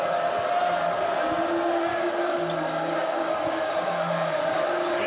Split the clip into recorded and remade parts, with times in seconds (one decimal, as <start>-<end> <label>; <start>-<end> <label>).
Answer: 0.0-1.9 recorded; 1.9-5.1 remade